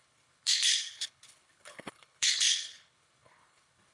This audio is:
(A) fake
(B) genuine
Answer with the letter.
A